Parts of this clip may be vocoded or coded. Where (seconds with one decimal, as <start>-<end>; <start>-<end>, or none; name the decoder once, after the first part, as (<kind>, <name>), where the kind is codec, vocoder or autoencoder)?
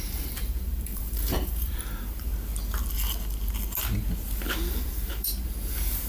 0.0-2.3 (vocoder, BigVGAN v2); 4.7-6.1